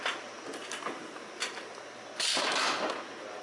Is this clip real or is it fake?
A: real